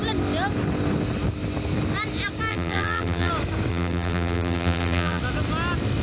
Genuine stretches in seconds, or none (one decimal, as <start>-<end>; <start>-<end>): 0.0-2.5; 3.3-3.7; 5.2-6.0